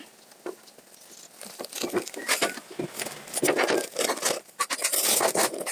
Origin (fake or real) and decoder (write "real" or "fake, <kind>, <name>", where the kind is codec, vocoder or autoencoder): real